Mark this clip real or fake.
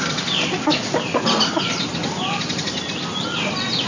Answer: real